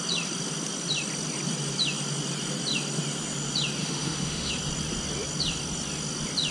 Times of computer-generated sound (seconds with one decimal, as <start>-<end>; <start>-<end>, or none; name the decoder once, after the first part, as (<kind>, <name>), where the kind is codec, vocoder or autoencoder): 3.8-4.5 (autoencoder, DAC-VAE)